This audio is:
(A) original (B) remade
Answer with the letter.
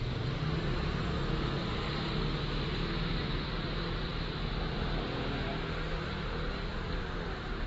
A